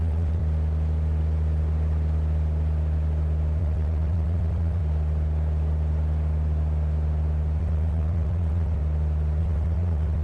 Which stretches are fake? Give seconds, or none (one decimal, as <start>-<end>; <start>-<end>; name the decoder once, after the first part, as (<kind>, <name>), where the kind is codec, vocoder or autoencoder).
0.0-0.4 (vocoder, WaveNeXt); 3.6-4.8; 7.6-8.8; 9.4-10.2